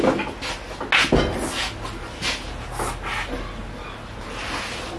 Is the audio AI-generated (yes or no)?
no